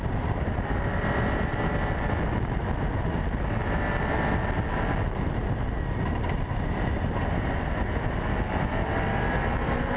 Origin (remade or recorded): recorded